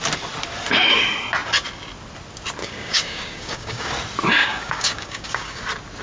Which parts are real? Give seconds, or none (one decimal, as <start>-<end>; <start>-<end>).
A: 0.0-2.6; 3.9-4.4; 5.6-6.0